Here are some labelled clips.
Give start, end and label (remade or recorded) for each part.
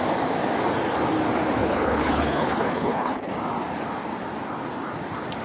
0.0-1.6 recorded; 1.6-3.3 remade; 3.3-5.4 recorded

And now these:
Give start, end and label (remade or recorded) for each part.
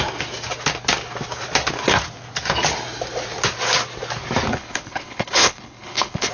0.0-4.5 recorded; 4.5-6.3 remade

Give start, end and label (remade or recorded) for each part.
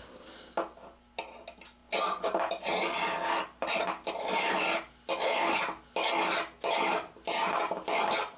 0.0-8.4 recorded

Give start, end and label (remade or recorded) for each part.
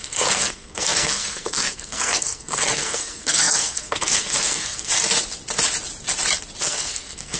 0.0-4.9 remade; 4.9-6.6 recorded; 6.6-7.4 remade